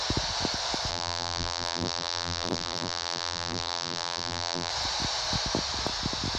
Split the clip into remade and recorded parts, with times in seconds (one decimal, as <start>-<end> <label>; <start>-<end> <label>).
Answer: 0.0-0.9 recorded; 0.9-4.7 remade; 4.7-6.4 recorded